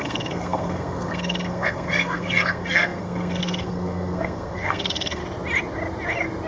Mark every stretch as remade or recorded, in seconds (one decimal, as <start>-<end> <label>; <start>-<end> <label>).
0.0-5.2 remade; 5.2-6.5 recorded